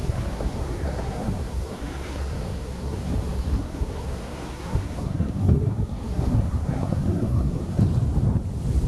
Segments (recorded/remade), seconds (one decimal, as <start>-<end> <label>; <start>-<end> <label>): 0.0-7.8 remade; 7.8-8.9 recorded